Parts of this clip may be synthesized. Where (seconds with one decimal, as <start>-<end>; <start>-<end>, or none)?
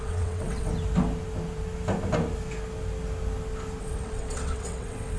0.0-0.7; 3.8-5.2